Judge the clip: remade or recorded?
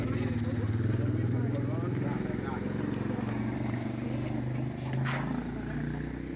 recorded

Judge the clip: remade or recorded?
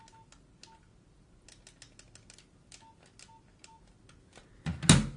recorded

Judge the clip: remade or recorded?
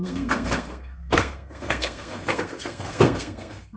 remade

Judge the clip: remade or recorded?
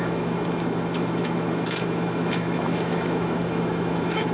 remade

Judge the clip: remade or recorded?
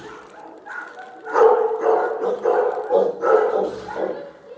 recorded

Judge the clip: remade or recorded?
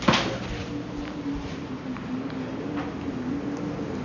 recorded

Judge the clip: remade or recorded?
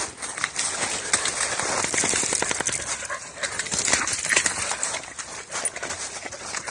recorded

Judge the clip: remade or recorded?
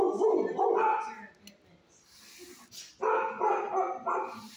recorded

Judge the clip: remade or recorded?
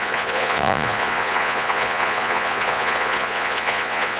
remade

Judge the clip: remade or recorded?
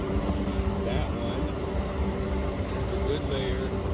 remade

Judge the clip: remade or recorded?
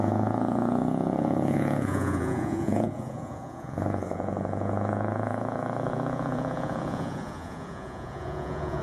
remade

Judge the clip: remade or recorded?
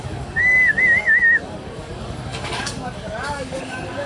remade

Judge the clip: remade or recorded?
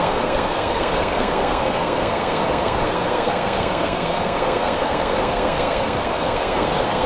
remade